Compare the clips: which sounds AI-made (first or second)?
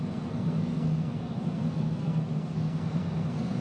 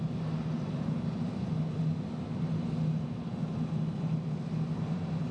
first